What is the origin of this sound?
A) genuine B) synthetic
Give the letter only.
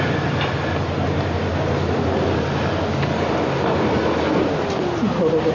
A